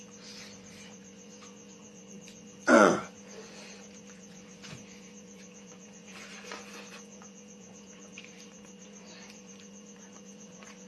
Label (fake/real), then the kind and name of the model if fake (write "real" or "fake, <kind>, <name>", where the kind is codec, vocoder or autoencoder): fake, vocoder, Vocos